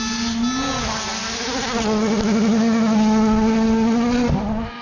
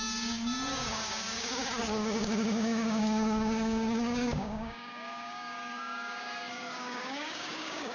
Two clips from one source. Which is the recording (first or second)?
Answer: first